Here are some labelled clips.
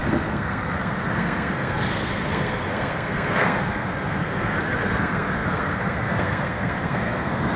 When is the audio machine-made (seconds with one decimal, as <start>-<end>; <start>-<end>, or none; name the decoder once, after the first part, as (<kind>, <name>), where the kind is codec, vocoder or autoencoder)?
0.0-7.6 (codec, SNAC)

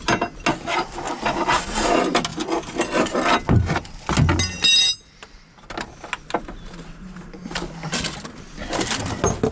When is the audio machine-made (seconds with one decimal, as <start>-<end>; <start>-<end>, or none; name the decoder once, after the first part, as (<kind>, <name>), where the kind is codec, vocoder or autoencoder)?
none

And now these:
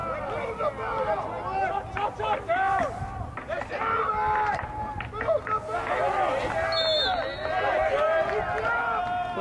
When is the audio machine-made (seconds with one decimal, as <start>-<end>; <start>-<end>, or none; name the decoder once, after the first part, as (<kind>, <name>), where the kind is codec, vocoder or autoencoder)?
none

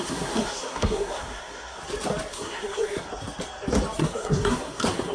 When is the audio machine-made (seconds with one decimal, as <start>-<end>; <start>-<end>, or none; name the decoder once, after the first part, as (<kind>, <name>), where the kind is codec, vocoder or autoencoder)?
0.0-1.8 (codec, SNAC); 2.3-3.1; 4.0-5.1

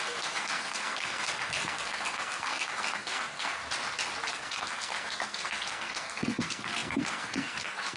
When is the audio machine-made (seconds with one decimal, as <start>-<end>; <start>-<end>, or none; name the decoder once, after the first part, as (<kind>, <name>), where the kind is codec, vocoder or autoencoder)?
0.0-3.6 (codec, SNAC); 4.3-8.0

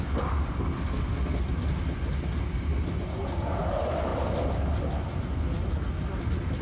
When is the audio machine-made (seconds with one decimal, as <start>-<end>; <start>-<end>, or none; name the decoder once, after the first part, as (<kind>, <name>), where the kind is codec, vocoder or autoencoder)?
none